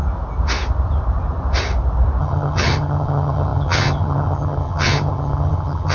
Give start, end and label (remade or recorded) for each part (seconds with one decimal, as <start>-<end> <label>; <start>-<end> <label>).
0.0-2.2 recorded; 2.2-5.9 remade